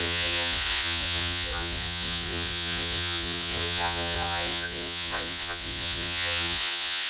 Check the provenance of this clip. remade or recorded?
remade